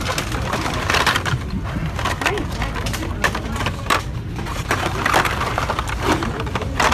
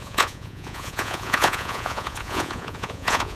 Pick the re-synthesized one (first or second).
second